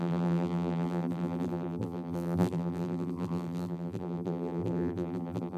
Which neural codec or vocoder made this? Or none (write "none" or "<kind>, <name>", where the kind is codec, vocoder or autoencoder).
vocoder, BigVGAN v2